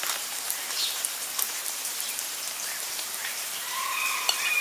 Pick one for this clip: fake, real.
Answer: fake